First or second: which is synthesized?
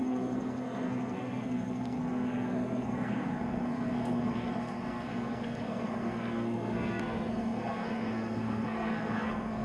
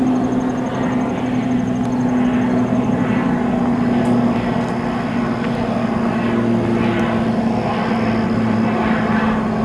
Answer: first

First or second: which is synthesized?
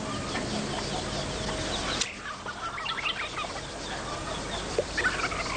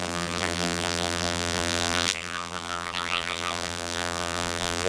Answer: second